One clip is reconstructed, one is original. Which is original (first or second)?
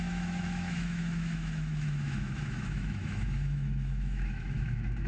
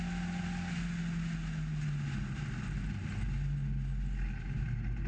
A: second